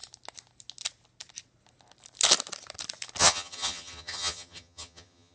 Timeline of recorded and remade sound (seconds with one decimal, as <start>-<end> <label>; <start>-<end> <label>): 0.0-3.2 recorded; 3.2-5.3 remade